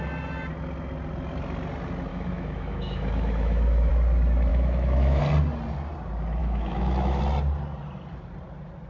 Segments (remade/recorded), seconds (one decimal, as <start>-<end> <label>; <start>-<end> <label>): 0.0-2.1 recorded; 2.1-3.9 remade; 3.9-4.5 recorded; 4.5-5.2 remade; 5.2-6.4 recorded; 6.4-7.2 remade; 7.2-8.9 recorded